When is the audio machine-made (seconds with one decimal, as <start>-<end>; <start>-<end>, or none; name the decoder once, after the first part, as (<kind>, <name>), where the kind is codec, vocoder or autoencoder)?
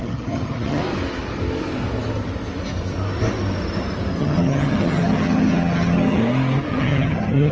0.0-0.8 (vocoder, HiFi-GAN); 4.2-6.2; 6.7-7.5